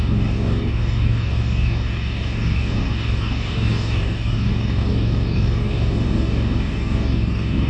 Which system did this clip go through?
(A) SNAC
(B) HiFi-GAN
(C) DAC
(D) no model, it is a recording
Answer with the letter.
C